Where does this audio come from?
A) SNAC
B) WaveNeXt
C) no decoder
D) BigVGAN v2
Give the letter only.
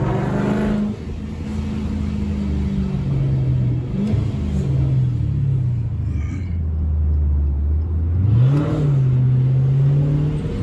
C